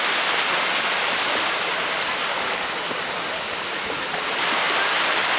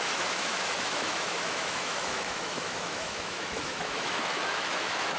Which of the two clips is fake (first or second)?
second